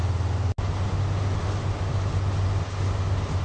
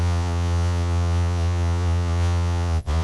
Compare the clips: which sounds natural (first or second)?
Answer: first